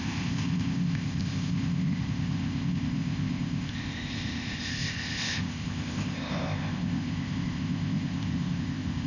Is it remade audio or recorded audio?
remade